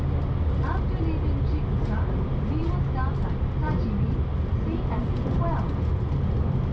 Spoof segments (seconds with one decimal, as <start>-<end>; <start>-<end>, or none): none

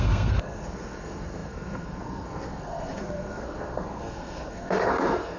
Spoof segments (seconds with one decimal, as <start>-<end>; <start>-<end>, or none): 0.0-5.4

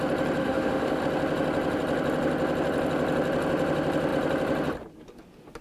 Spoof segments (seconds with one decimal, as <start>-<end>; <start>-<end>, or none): 0.4-1.0

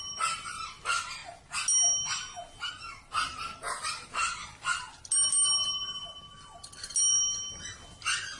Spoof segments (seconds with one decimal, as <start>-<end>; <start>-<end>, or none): 0.0-1.2; 2.7-4.4; 7.1-8.4

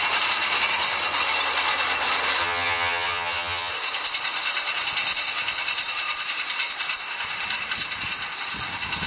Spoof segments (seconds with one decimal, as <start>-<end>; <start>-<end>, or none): 2.4-3.7